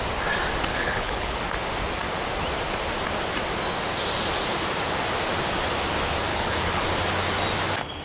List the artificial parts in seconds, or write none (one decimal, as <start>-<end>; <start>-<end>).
0.7-1.4; 6.3-6.8